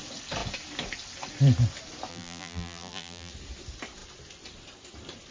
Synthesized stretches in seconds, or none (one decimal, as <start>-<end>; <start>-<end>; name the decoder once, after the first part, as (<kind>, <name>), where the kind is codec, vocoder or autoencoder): 2.1-3.3 (vocoder, BigVGAN v2)